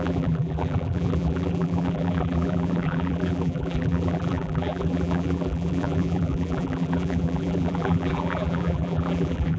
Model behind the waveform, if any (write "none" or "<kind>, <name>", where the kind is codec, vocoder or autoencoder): vocoder, BigVGAN v2